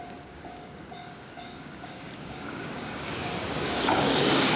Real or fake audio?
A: fake